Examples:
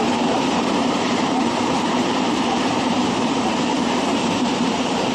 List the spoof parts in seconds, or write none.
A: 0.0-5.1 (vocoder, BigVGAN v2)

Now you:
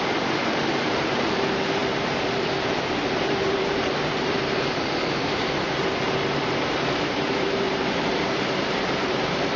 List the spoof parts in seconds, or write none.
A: 0.0-9.6 (vocoder, BigVGAN v2)

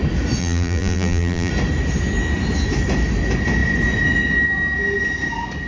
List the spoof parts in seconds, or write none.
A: 0.4-1.5 (vocoder, BigVGAN v2)

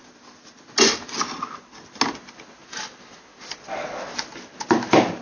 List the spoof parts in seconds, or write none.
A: none

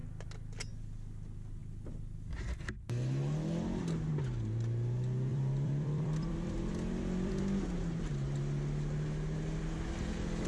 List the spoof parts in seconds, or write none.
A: 5.3-7.3 (vocoder, BigVGAN v2)